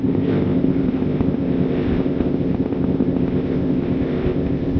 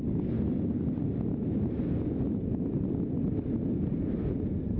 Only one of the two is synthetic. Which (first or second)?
first